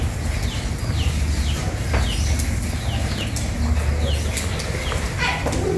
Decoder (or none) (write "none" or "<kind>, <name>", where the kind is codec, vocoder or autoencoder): none